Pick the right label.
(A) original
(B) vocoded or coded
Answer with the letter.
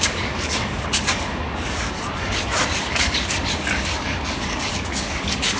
B